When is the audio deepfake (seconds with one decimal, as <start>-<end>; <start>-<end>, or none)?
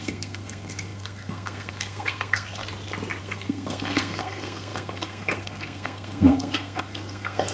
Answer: 0.0-2.6; 3.2-7.5